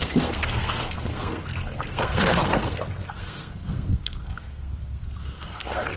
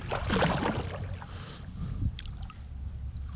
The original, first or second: second